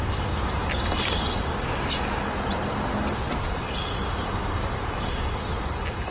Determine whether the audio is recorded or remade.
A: recorded